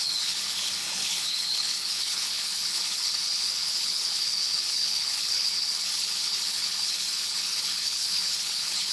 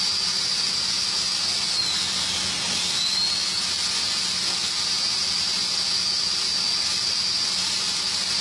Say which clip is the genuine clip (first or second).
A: second